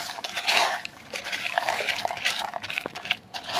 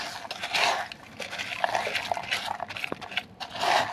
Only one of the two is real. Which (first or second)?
second